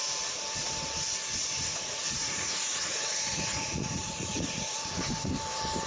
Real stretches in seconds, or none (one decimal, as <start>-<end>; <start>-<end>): 0.0-1.7; 5.2-5.9